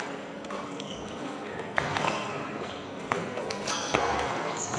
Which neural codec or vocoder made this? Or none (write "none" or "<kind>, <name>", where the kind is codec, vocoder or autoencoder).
codec, SNAC